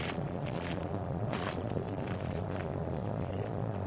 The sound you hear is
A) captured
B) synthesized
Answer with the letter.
B